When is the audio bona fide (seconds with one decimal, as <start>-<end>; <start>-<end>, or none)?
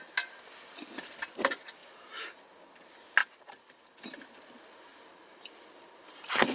0.0-1.8; 2.4-3.2; 4.0-4.9; 6.1-6.5